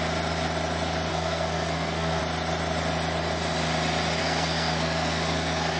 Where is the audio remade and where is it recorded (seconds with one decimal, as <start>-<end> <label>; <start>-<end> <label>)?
0.0-1.1 recorded; 1.1-2.2 remade; 2.2-4.2 recorded; 4.2-5.8 remade